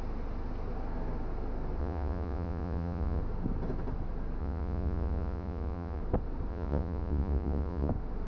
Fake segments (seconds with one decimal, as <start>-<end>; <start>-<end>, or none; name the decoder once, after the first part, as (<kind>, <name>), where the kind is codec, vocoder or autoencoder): 1.8-3.2 (vocoder, Vocos); 4.4-6.0; 6.5-7.9